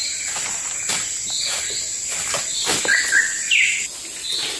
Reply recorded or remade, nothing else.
recorded